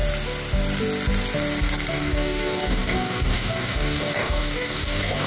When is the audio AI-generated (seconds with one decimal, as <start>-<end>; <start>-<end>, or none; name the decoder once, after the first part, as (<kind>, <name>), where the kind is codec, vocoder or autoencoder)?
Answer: 1.9-5.3 (codec, DAC)